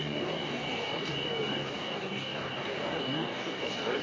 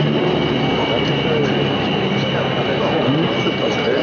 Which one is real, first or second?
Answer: second